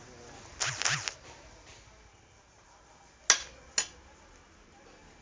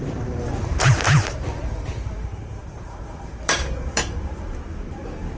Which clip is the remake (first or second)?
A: second